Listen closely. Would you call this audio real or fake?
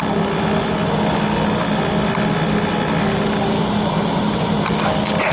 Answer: real